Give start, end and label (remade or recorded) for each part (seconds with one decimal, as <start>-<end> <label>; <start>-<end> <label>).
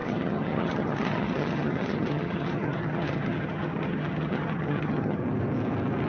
0.0-5.2 remade; 5.2-6.1 recorded